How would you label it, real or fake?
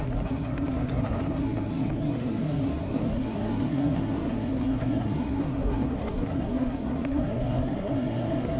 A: fake